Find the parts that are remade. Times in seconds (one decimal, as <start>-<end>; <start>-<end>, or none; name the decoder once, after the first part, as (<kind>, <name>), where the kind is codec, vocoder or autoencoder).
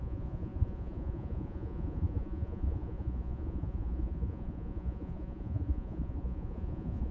0.0-7.1 (vocoder, Vocos)